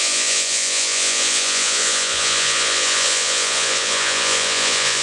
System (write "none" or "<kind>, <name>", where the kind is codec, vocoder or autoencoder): vocoder, Vocos